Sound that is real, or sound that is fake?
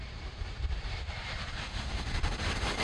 fake